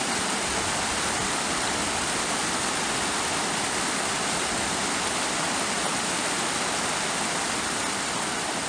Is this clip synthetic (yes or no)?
no